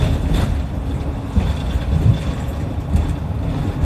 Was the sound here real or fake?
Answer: real